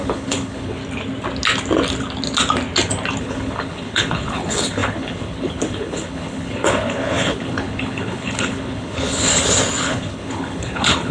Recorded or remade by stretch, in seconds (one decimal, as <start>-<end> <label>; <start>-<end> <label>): 0.0-0.8 remade; 0.8-3.2 recorded; 3.2-9.3 remade; 9.3-9.8 recorded; 9.8-11.1 remade